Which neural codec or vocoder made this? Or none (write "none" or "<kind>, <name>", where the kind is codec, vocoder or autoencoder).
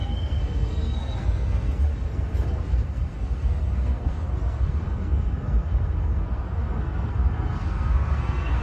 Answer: codec, SNAC